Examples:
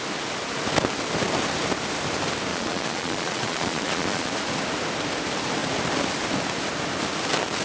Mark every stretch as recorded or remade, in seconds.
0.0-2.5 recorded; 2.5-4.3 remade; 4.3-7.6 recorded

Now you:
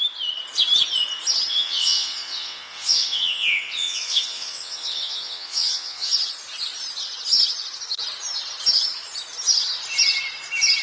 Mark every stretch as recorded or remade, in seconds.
0.0-1.5 recorded; 1.5-6.1 remade; 6.1-10.8 recorded

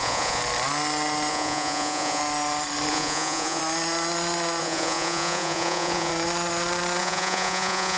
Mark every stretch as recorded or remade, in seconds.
0.0-0.4 remade; 0.4-1.3 recorded; 1.3-2.2 remade; 2.2-2.9 recorded; 2.9-3.6 remade; 3.6-4.6 recorded; 4.6-6.1 remade; 6.1-7.0 recorded; 7.0-8.0 remade